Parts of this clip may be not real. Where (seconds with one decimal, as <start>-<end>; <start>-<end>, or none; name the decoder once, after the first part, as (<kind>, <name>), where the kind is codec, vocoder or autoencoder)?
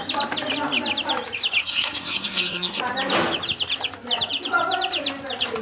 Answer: 1.6-2.8 (codec, SNAC)